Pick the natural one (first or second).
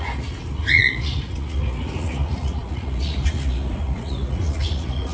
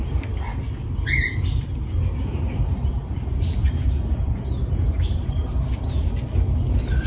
second